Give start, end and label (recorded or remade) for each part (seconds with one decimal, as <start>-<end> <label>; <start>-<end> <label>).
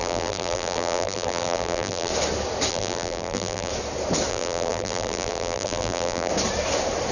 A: 0.0-2.1 remade; 2.1-2.7 recorded; 2.7-3.7 remade; 3.7-4.3 recorded; 4.3-6.3 remade; 6.3-7.1 recorded